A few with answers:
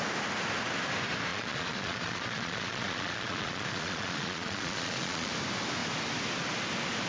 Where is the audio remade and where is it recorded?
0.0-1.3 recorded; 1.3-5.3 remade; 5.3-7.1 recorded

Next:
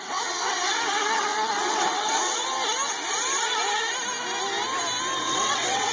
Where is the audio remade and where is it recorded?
0.0-2.4 remade; 2.4-5.2 recorded; 5.2-5.9 remade

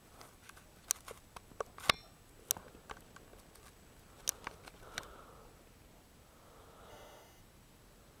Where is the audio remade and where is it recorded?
0.0-6.9 recorded; 6.9-7.4 remade; 7.4-8.2 recorded

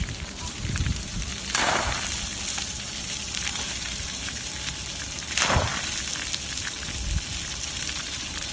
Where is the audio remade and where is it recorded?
0.0-1.3 remade; 1.3-2.7 recorded; 2.7-5.7 remade; 5.7-7.5 recorded; 7.5-8.5 remade

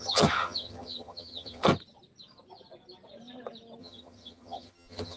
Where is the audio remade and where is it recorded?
0.0-1.7 remade; 1.7-3.8 recorded; 3.8-5.2 remade

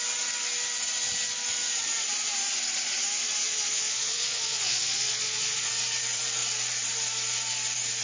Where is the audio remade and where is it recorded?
0.0-3.4 recorded; 3.4-5.7 remade; 5.7-8.0 recorded

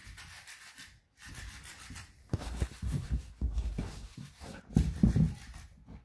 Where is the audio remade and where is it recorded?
0.0-2.2 recorded; 2.2-4.6 remade; 4.6-6.0 recorded

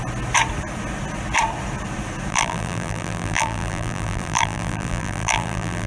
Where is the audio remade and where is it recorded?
0.0-2.3 recorded; 2.3-5.9 remade